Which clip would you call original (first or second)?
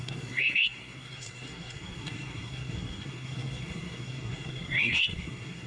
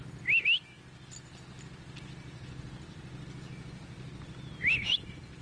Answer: second